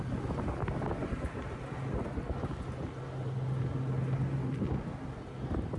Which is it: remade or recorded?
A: recorded